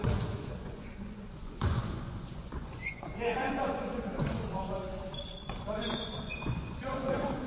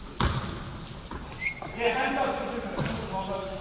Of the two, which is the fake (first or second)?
first